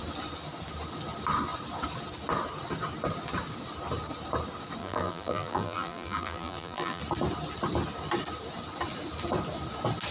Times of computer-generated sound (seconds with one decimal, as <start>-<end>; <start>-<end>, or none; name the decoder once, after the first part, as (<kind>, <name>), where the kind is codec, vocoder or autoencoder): 4.8-7.0 (vocoder, BigVGAN v2)